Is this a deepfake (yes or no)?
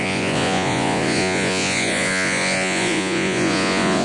yes